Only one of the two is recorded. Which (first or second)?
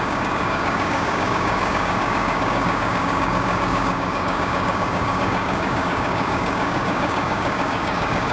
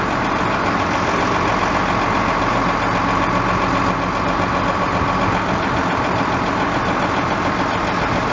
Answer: second